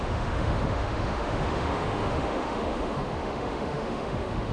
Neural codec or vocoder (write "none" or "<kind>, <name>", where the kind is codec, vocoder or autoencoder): autoencoder, DAC-VAE